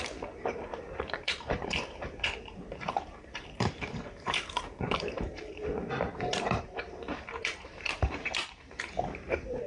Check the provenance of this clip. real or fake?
fake